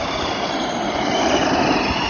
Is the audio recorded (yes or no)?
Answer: no